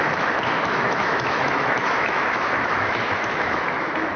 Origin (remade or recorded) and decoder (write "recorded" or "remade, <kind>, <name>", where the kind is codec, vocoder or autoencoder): remade, autoencoder, DAC-VAE